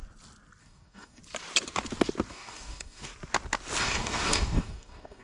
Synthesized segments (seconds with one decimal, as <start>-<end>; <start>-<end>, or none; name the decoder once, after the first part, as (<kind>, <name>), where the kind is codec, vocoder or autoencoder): 0.6-1.2 (codec, DAC); 2.3-3.1; 3.8-5.2